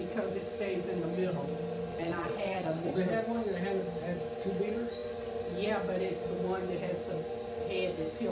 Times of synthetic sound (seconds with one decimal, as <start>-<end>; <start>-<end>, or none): 1.9-2.9